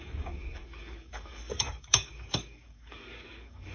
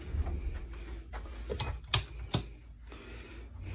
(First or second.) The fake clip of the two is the first